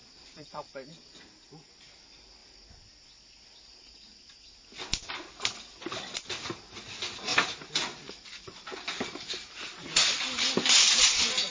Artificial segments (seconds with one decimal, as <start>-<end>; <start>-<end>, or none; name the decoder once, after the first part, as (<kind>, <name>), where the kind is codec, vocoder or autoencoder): 0.0-0.7 (vocoder, BigVGAN v2); 7.3-11.0